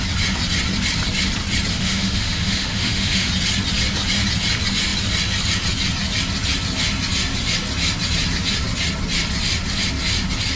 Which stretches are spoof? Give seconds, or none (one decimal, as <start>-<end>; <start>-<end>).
1.7-3.3